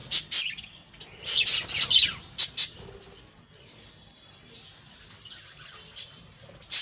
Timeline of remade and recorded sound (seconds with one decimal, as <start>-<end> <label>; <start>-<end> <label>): 0.0-6.8 recorded